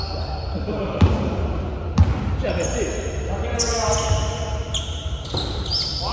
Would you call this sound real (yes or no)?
yes